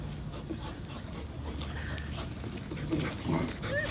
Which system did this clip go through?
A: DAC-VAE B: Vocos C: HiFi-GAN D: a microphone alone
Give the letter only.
D